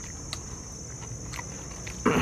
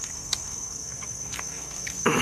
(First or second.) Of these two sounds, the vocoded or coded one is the second